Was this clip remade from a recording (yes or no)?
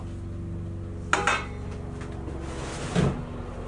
no